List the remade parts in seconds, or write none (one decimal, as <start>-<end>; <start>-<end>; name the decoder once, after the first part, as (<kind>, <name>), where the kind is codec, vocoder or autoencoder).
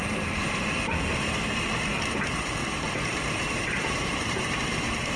0.0-5.2 (vocoder, BigVGAN v2)